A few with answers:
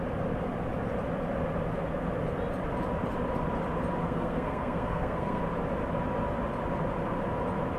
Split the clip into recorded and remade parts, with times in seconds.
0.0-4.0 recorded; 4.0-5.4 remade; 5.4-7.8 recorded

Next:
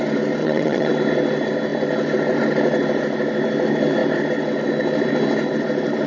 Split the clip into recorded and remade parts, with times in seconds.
0.0-0.4 recorded; 0.4-0.9 remade; 0.9-6.1 recorded

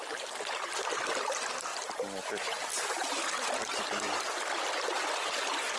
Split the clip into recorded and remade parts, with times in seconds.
0.0-1.7 recorded; 1.7-4.4 remade; 4.4-5.8 recorded